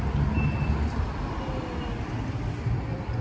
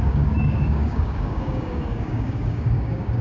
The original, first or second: first